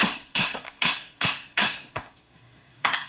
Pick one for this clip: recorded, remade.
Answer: remade